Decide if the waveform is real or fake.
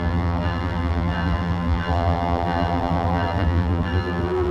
fake